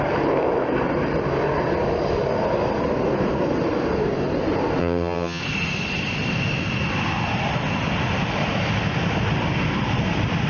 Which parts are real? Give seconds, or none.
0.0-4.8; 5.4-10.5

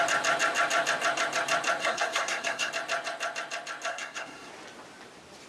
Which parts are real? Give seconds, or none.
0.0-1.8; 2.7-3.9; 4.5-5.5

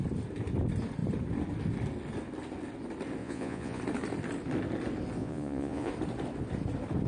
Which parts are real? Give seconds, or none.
0.0-3.2; 3.8-5.2; 5.9-7.1